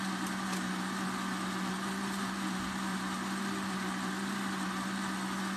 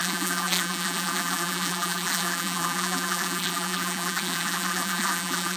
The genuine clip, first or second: first